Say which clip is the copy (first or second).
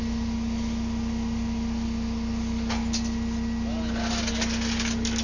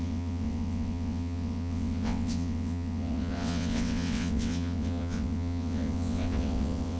second